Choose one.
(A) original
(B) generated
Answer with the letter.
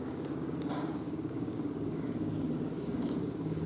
B